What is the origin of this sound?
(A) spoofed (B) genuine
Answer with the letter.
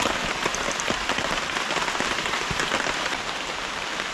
B